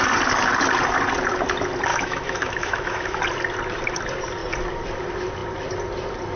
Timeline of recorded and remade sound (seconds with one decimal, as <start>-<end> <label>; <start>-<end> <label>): 0.0-1.9 recorded; 1.9-3.2 remade; 3.2-6.4 recorded